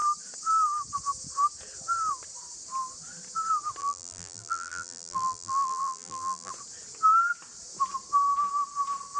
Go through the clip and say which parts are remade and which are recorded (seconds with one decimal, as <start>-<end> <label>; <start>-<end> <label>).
0.0-3.8 recorded; 3.8-6.5 remade; 6.5-9.2 recorded

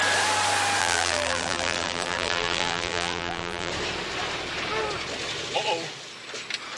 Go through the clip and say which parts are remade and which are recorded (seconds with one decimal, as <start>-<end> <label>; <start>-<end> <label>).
0.0-0.8 recorded; 0.8-3.7 remade; 3.7-6.8 recorded

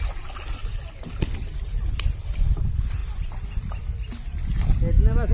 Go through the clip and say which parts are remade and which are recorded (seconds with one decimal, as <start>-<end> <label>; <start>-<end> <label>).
0.0-0.6 recorded; 0.6-2.6 remade; 2.6-5.3 recorded

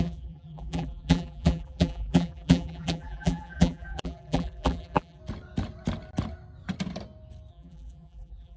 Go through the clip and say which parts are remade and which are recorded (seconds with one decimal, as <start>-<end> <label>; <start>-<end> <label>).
0.0-5.2 remade; 5.2-7.5 recorded; 7.5-8.6 remade

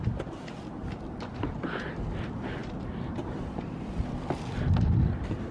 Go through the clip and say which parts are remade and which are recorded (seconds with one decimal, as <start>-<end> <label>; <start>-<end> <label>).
0.0-2.6 recorded; 2.6-3.9 remade; 3.9-5.5 recorded

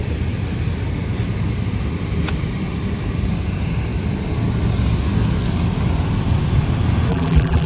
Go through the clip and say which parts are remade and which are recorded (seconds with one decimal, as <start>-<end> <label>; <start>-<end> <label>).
0.0-7.1 recorded; 7.1-7.7 remade

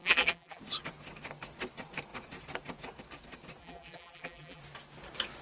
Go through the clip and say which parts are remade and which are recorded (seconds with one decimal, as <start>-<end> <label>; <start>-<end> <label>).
0.0-0.6 remade; 0.6-3.6 recorded; 3.6-4.6 remade; 4.6-5.4 recorded